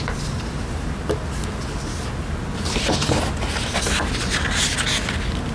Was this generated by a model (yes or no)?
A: no